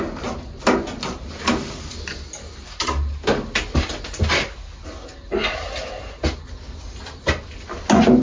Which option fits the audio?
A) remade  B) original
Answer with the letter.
B